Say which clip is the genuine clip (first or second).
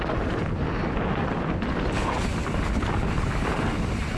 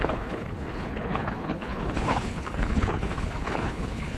first